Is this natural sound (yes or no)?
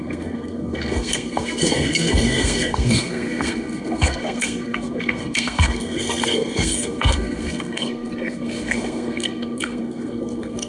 no